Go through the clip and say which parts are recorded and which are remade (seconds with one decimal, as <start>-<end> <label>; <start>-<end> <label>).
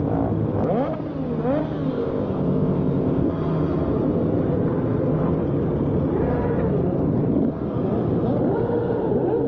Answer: 0.0-1.9 recorded; 1.9-3.3 remade; 3.3-9.5 recorded